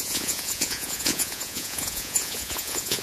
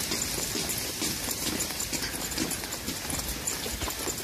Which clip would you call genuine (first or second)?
second